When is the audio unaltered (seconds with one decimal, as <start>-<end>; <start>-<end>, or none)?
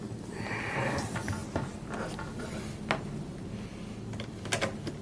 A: 0.0-5.0